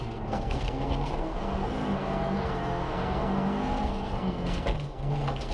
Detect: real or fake fake